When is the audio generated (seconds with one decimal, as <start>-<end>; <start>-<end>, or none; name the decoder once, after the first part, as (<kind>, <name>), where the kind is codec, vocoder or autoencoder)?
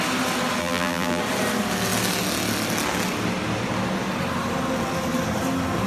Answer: 0.6-1.2 (vocoder, BigVGAN v2)